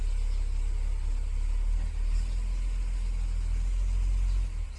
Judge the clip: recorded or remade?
recorded